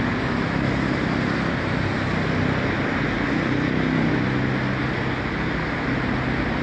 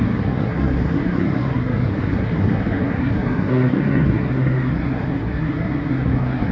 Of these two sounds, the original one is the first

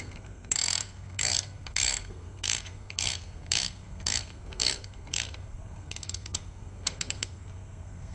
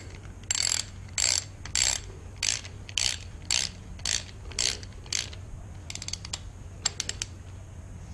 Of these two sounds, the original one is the second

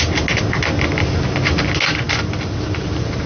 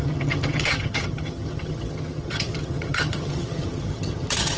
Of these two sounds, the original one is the first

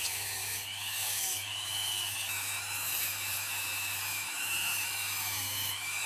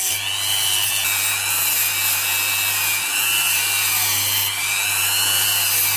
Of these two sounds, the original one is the second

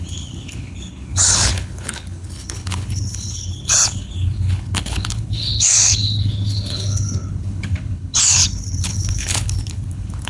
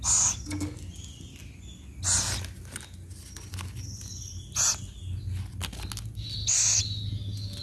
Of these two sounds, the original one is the second